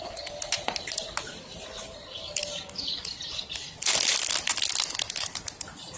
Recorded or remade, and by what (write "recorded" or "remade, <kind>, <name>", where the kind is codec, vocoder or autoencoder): recorded